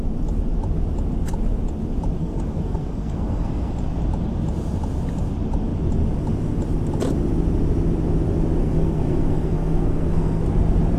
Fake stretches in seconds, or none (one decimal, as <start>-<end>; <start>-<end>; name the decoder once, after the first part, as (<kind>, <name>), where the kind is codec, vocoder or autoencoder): 2.2-3.7 (codec, SNAC); 8.6-10.4